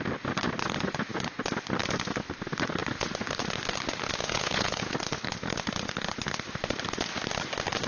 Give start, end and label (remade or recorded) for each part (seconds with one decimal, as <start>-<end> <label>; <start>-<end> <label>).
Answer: 0.0-4.2 recorded; 4.2-4.9 remade; 4.9-7.9 recorded